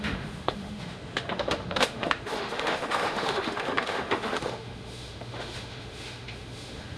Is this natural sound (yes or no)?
no